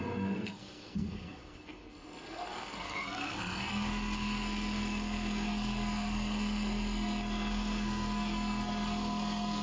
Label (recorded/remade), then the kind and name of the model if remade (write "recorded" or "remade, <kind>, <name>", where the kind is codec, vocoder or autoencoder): remade, codec, SNAC